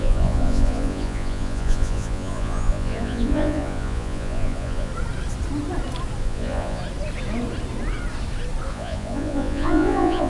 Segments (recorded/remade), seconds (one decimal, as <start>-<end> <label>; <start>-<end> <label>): 0.0-4.9 remade; 4.9-6.2 recorded; 6.2-6.8 remade; 6.8-8.7 recorded; 8.7-10.3 remade